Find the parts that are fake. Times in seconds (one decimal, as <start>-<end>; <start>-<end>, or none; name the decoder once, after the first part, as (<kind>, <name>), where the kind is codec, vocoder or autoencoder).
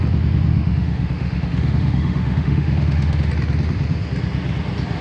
0.5-3.3 (autoencoder, DAC-VAE)